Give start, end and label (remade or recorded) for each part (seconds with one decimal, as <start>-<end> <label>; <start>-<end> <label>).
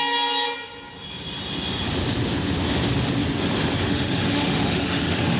0.0-3.8 recorded; 3.8-5.4 remade